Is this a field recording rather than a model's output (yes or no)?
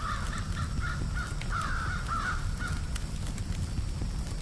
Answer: yes